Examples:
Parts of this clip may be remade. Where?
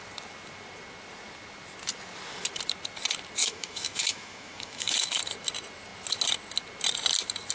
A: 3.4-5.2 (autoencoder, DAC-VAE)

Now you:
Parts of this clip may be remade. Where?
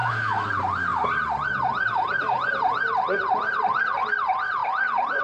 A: 0.0-0.5 (autoencoder, DAC-VAE)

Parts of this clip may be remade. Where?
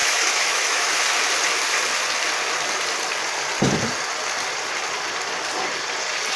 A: 0.0-0.9 (autoencoder, DAC-VAE)